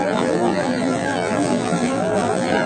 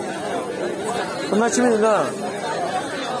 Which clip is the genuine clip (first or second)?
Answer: second